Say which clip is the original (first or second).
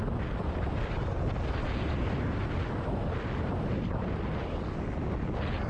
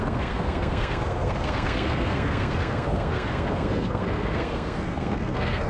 first